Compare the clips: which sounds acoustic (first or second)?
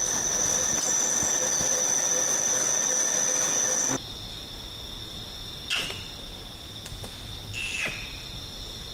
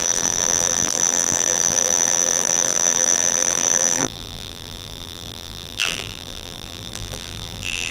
first